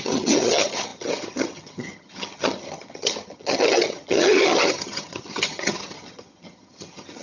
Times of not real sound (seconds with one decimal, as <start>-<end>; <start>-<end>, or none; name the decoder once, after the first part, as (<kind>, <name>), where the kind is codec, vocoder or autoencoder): 0.0-7.2 (vocoder, HiFi-GAN)